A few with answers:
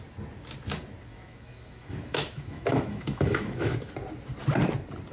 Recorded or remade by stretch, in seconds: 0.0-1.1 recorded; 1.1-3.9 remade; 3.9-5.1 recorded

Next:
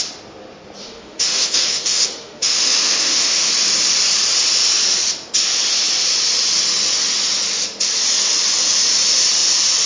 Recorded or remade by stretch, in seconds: 0.0-0.8 recorded; 0.8-3.5 remade; 3.5-9.9 recorded

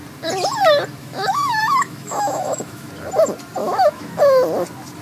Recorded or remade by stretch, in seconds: 0.0-1.0 recorded; 1.0-2.9 remade; 2.9-3.6 recorded; 3.6-4.2 remade; 4.2-5.0 recorded

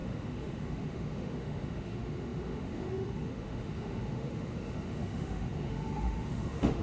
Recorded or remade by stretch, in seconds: 0.0-6.8 remade

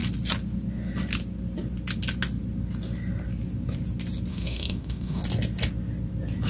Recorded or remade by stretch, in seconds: 0.0-4.3 recorded; 4.3-5.2 remade; 5.2-6.5 recorded